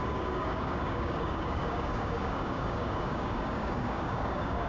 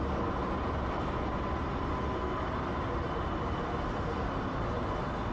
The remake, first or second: first